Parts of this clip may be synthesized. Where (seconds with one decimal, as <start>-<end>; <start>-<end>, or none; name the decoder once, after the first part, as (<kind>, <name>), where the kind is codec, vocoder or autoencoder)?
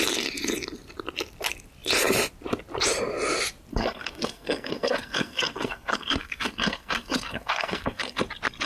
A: 3.7-8.2 (codec, SNAC)